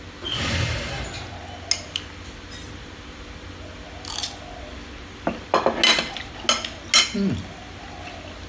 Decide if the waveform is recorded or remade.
recorded